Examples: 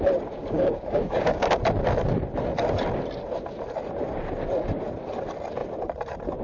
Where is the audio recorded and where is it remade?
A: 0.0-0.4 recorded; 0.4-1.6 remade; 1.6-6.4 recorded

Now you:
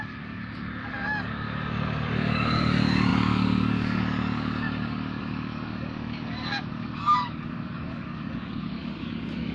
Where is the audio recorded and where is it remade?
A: 0.0-9.5 remade

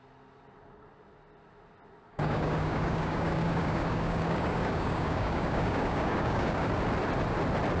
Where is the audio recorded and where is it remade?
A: 0.0-2.1 recorded; 2.1-6.7 remade; 6.7-7.8 recorded